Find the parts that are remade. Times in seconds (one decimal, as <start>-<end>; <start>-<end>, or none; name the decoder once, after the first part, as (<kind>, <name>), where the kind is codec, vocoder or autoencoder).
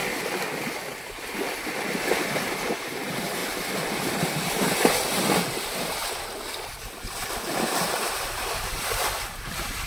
2.2-3.4 (vocoder, BigVGAN v2); 7.3-9.9